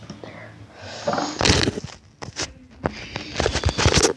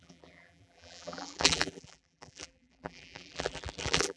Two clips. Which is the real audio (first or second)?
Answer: first